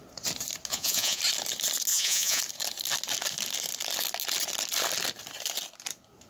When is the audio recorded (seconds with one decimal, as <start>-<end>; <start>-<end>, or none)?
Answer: 0.0-0.7; 1.2-1.9; 2.4-6.3